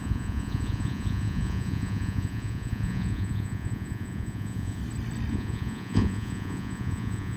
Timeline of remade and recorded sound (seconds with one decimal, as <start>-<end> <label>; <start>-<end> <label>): 0.0-4.8 remade; 4.8-5.3 recorded; 5.3-7.4 remade

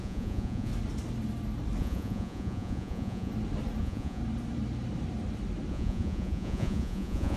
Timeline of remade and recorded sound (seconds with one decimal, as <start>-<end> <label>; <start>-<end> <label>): 0.0-0.7 remade; 0.7-1.8 recorded; 1.8-3.3 remade; 3.3-3.8 recorded; 3.8-4.2 remade; 4.2-5.7 recorded; 5.7-7.4 remade